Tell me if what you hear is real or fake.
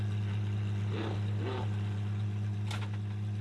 real